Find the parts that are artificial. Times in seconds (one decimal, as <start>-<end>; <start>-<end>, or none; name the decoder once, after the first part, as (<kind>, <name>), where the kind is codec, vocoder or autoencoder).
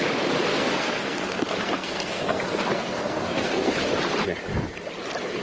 0.5-3.7 (codec, SNAC)